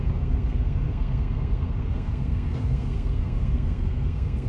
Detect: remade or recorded remade